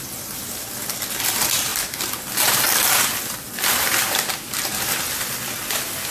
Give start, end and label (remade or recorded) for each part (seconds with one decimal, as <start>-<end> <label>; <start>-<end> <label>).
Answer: 0.0-6.1 recorded